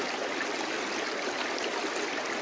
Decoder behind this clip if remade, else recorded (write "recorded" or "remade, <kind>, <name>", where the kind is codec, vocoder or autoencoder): recorded